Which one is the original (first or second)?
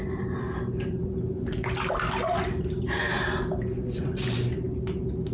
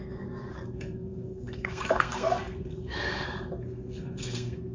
first